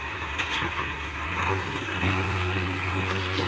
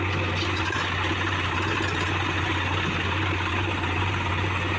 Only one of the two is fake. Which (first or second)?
first